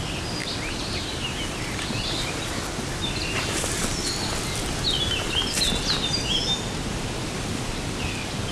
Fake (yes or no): no